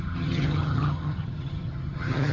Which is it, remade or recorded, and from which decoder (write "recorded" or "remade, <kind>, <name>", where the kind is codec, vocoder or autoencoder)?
remade, vocoder, HiFi-GAN